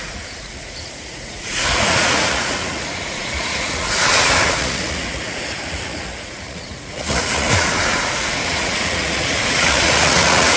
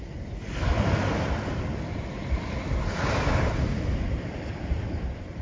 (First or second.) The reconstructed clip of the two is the first